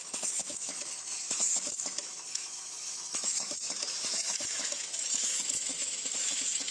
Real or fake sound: fake